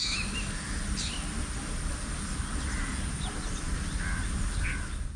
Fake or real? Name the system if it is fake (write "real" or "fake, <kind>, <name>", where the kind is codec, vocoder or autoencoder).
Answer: real